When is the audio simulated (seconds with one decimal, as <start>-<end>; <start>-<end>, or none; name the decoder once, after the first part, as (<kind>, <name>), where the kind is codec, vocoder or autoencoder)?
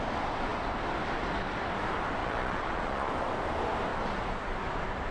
2.2-3.1 (vocoder, Vocos)